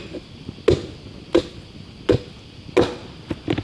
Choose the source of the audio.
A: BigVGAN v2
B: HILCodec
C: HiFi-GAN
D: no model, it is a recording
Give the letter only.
D